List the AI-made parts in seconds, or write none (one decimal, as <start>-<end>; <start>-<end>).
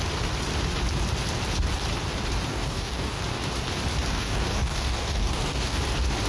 2.5-3.2; 4.1-5.8